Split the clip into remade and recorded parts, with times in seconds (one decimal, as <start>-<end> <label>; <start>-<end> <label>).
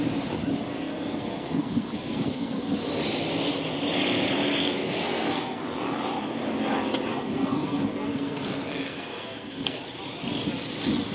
0.0-0.7 recorded; 0.7-2.9 remade; 2.9-4.6 recorded; 4.6-5.6 remade; 5.6-7.1 recorded; 7.1-9.8 remade; 9.8-11.1 recorded